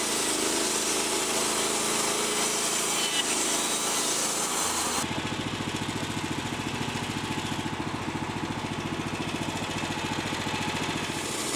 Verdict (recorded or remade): recorded